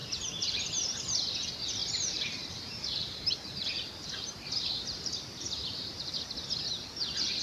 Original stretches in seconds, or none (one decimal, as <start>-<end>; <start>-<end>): 1.0-1.8; 6.2-7.4